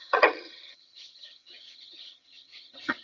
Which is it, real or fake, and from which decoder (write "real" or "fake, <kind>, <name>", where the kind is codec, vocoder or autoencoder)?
fake, vocoder, HiFi-GAN